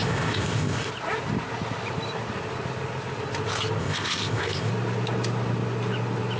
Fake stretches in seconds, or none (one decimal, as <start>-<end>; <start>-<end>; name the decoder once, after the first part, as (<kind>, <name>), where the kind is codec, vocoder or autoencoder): 0.0-0.9 (codec, ZipCodec); 3.8-4.7